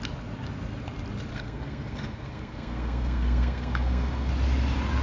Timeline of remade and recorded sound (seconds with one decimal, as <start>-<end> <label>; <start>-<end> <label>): 0.0-1.3 recorded; 1.3-4.3 remade; 4.3-5.0 recorded

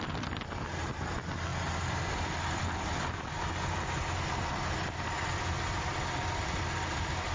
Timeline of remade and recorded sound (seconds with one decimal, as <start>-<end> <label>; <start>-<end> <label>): 0.0-7.3 recorded

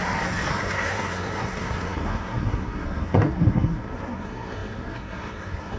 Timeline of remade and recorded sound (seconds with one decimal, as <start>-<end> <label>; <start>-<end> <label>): 0.0-0.5 recorded; 0.5-5.8 remade

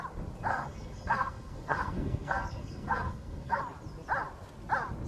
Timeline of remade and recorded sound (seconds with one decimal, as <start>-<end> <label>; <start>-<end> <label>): 0.0-0.5 recorded; 0.5-3.6 remade; 3.6-5.1 recorded

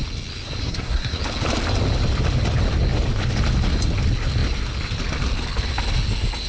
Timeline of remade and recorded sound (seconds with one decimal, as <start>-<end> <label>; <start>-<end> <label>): 0.0-0.6 recorded; 0.6-1.2 remade; 1.2-6.5 recorded